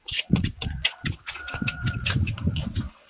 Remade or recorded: remade